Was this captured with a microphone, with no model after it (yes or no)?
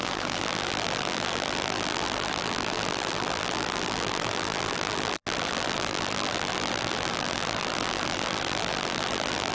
no